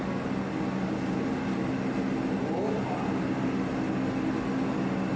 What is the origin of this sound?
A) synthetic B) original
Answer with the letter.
B